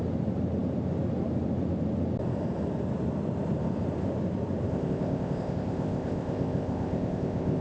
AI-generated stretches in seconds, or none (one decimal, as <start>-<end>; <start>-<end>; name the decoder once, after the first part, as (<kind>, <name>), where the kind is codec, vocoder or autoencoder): 4.7-7.6 (codec, ZipCodec)